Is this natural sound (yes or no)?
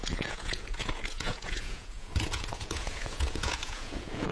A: no